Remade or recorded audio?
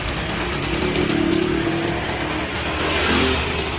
recorded